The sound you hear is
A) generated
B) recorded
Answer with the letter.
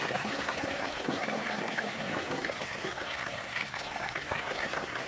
A